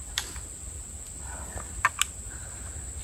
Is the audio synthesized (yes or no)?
no